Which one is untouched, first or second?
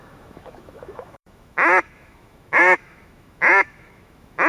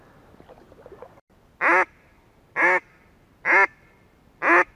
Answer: second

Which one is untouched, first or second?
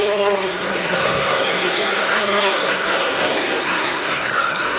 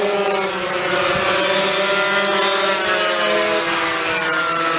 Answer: second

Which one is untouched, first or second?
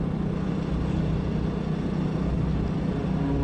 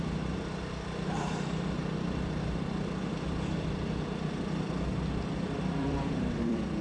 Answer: first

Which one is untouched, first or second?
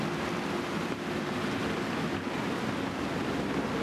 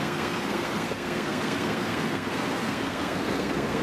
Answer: first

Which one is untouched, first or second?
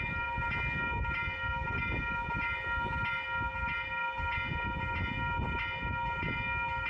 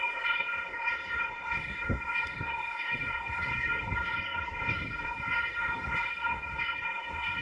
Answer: first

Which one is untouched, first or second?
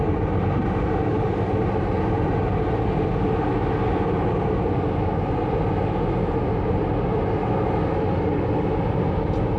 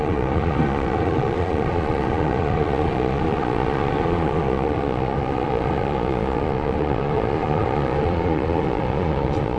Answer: first